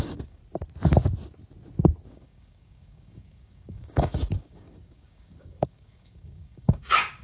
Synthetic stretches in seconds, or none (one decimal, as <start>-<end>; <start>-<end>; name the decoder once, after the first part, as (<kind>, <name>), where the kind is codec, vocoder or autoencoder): 0.0-0.4 (codec, DAC); 2.1-7.2